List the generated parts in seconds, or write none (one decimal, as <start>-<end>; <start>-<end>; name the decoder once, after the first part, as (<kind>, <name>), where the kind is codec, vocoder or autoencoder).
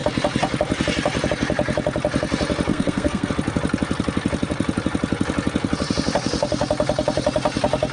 2.7-3.3 (codec, SNAC)